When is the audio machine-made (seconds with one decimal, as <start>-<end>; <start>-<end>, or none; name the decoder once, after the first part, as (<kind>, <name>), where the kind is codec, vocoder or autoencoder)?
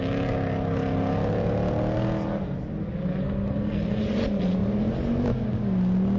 3.2-4.0 (codec, SNAC)